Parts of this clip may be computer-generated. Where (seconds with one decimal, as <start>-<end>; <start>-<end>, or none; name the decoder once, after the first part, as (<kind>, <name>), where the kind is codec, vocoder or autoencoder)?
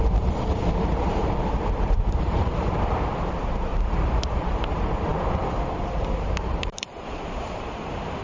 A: 0.0-3.7 (vocoder, BigVGAN v2); 4.3-8.2